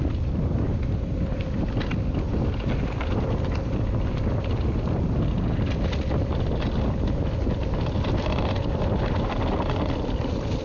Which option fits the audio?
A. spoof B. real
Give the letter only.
B